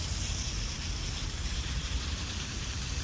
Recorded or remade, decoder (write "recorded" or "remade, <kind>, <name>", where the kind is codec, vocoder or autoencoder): remade, vocoder, BigVGAN v2